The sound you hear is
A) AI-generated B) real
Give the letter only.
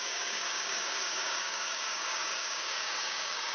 A